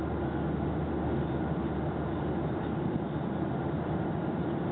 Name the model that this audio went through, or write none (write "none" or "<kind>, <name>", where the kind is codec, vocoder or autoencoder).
none